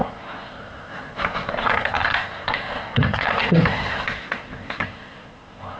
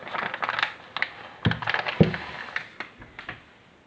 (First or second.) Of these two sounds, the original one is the second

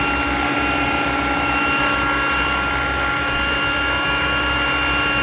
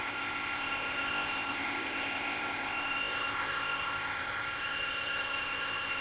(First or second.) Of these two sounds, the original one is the first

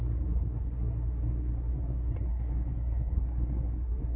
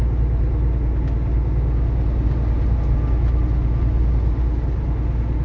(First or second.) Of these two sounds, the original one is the second